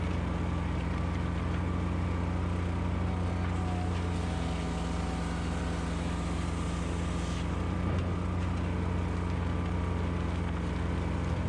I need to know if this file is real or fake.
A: real